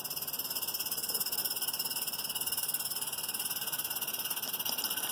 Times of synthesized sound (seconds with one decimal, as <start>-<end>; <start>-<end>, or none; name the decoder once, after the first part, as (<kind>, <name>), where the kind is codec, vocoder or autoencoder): none